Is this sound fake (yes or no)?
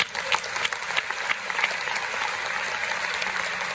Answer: no